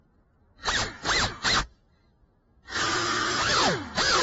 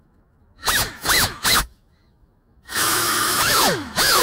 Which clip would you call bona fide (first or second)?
first